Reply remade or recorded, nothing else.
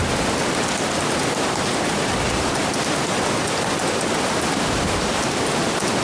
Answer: remade